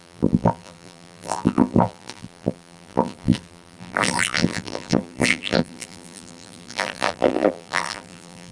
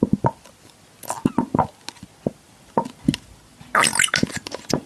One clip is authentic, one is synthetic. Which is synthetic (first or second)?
first